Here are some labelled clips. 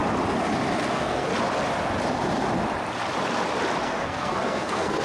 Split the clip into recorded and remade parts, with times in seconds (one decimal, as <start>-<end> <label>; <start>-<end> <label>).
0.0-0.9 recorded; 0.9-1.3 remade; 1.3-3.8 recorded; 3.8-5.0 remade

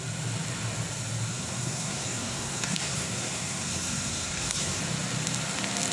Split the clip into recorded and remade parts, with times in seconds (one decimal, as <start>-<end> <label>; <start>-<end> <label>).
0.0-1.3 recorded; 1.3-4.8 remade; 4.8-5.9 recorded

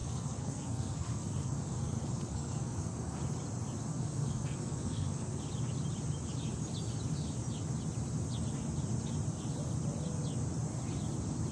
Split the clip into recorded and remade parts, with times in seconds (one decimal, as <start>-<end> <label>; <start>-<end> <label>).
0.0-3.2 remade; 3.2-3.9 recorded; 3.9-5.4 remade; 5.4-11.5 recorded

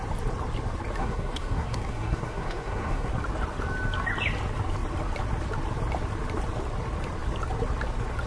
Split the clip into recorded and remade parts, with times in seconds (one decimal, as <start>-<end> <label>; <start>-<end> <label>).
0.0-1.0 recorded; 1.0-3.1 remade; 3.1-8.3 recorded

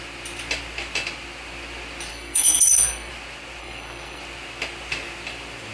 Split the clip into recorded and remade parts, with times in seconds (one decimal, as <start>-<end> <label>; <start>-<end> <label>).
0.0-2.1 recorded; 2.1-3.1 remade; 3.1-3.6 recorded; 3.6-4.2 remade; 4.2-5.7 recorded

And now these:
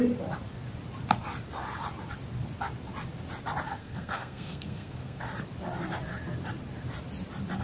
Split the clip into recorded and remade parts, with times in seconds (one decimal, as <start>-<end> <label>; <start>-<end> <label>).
0.0-3.8 recorded; 3.8-5.2 remade; 5.2-7.6 recorded